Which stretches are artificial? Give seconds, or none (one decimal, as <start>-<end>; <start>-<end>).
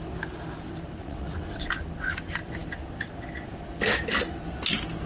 1.0-1.7